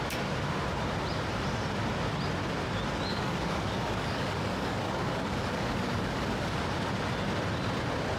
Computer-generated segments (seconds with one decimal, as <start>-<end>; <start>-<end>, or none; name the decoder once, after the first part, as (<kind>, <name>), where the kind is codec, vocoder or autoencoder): 3.1-6.6 (codec, DAC)